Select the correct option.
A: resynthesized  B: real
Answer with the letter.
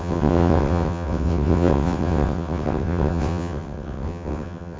A